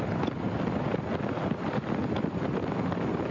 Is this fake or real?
real